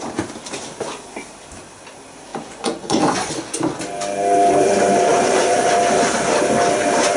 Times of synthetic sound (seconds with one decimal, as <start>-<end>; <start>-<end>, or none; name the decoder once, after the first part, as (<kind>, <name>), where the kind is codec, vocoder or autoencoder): 2.3-3.3 (vocoder, Vocos); 5.1-5.7